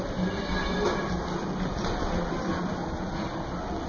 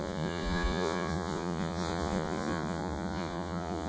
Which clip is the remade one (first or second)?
second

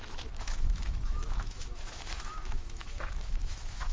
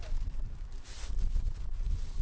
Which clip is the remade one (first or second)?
first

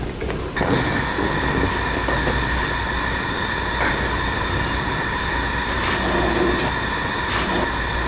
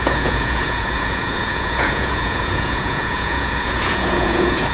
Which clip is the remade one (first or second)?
second